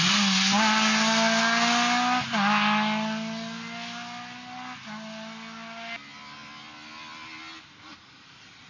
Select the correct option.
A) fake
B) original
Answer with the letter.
B